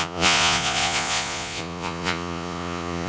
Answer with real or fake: fake